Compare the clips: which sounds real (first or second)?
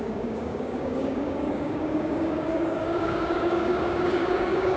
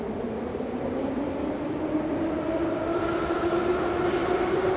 second